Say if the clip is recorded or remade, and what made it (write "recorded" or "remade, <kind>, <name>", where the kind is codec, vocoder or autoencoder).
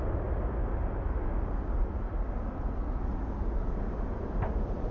recorded